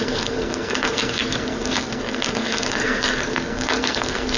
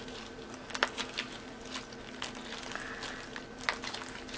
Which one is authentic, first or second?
second